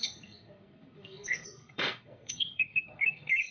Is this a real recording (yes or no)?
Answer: no